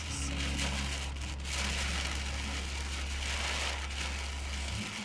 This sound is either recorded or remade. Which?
recorded